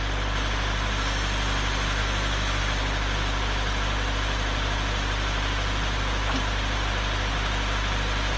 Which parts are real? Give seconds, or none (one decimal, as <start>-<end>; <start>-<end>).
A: 0.0-2.0; 2.6-8.4